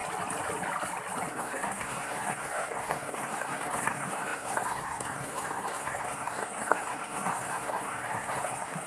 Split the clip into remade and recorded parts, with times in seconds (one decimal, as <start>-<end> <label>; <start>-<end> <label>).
0.0-1.3 recorded; 1.3-8.9 remade